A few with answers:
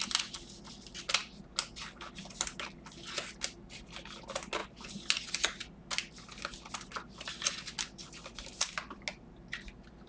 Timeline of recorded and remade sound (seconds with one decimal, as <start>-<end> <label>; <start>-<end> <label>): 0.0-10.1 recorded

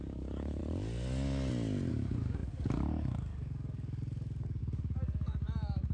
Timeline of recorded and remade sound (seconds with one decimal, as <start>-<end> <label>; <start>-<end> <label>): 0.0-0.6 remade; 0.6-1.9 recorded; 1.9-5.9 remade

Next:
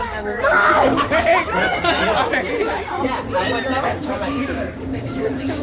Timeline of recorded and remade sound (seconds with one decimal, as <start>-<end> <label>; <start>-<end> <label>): 0.0-1.3 remade; 1.3-3.8 recorded; 3.8-5.6 remade

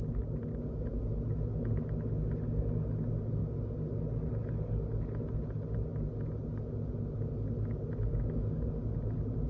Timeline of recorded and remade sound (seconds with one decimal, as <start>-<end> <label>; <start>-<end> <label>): 0.0-8.1 recorded; 8.1-8.7 remade; 8.7-9.5 recorded